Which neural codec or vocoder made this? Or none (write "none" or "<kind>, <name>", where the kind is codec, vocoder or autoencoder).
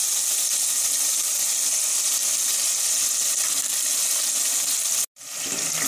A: none